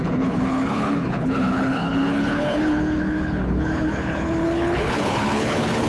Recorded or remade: remade